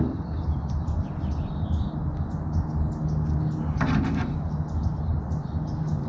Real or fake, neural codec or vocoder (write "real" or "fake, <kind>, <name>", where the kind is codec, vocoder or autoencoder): real